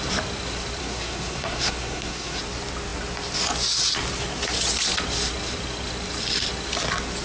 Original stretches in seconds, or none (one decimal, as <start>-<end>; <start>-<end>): 0.0-0.8; 2.4-7.2